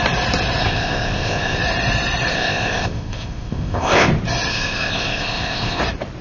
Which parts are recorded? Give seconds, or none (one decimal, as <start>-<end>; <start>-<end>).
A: 0.0-0.6; 1.6-2.3; 4.1-4.5; 5.8-6.2